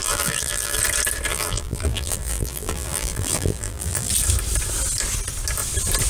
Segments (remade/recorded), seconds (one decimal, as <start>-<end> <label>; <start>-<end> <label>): 0.0-0.8 remade; 0.8-1.3 recorded; 1.3-4.1 remade; 4.1-6.1 recorded